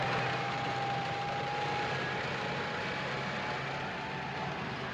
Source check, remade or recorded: recorded